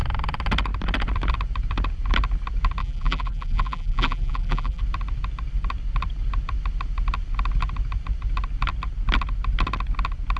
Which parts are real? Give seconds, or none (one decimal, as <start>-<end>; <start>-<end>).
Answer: 0.0-2.8; 4.8-10.4